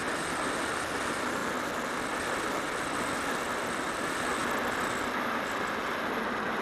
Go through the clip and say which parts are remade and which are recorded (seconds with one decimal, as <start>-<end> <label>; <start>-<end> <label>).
0.0-6.6 recorded